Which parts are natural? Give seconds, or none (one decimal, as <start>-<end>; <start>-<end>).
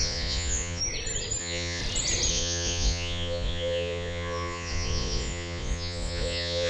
0.8-1.4; 1.8-2.3